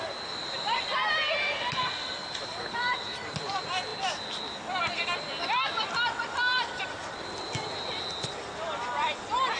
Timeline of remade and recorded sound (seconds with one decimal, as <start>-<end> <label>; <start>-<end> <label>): 0.0-9.6 remade